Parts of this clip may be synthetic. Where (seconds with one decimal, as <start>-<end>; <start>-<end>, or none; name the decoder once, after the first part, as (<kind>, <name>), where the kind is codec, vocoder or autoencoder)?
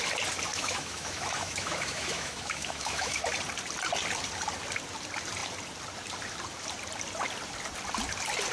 0.5-3.2 (autoencoder, DAC-VAE)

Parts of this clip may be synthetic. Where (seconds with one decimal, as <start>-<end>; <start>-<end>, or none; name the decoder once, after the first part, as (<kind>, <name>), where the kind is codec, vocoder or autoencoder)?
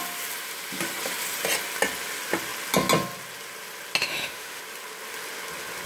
4.0-4.6 (autoencoder, DAC-VAE)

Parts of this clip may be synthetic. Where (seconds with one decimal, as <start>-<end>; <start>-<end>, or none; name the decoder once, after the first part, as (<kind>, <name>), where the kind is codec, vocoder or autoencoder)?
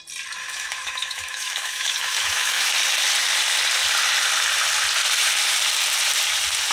0.4-2.7 (autoencoder, DAC-VAE)